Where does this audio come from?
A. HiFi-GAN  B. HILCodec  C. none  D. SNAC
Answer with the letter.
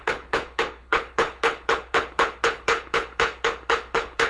B